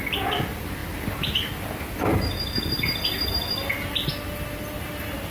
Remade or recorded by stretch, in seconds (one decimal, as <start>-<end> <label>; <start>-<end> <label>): 0.0-5.3 recorded